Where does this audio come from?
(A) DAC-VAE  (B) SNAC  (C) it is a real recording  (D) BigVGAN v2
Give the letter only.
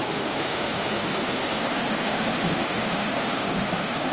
A